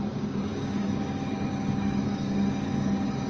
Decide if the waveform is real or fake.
fake